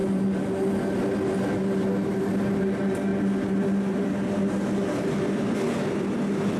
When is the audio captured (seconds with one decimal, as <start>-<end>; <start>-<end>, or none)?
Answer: 0.0-6.6

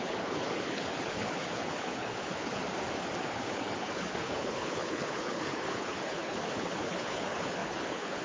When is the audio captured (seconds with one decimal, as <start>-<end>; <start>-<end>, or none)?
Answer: 2.6-3.2

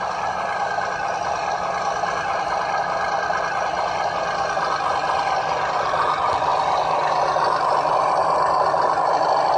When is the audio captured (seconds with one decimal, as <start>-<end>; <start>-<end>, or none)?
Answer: 0.0-9.6

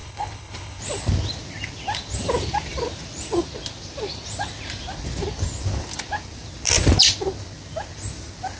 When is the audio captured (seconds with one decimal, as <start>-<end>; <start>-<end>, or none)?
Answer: 0.8-8.6

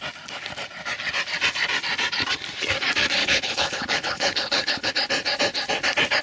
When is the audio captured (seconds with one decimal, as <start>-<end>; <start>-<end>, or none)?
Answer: 0.0-3.2; 4.9-6.2

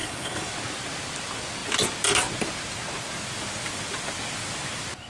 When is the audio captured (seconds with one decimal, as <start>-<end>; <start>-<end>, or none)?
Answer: 0.5-5.1